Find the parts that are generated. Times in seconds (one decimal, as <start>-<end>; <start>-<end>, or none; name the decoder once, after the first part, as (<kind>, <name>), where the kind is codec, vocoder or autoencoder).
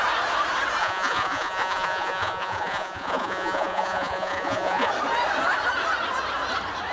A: 0.8-4.9 (vocoder, Vocos)